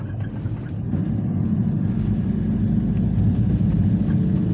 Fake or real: real